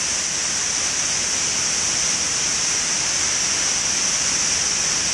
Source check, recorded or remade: recorded